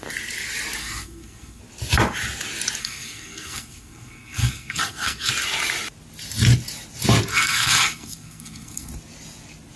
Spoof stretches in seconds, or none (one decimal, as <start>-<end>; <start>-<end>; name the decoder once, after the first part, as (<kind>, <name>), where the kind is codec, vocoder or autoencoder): 0.8-1.6 (codec, SNAC); 2.8-5.3; 7.3-8.9